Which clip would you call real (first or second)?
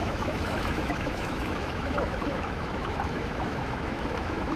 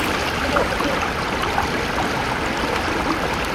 second